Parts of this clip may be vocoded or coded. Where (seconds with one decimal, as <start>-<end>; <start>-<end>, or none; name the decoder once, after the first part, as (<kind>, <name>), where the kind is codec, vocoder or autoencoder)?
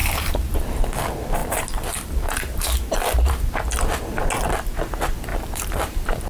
0.0-0.8 (vocoder, BigVGAN v2); 1.4-3.5; 5.3-6.3